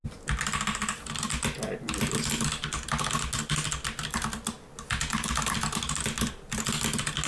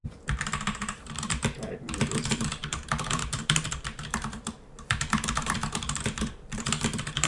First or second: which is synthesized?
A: second